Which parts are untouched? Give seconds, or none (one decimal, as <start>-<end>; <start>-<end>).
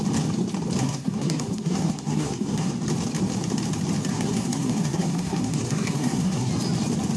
0.0-0.8; 2.7-4.1; 6.5-7.2